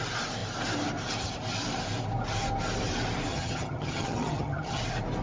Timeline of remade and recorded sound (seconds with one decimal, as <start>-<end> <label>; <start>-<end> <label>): 0.0-3.3 recorded; 3.3-4.8 remade; 4.8-5.2 recorded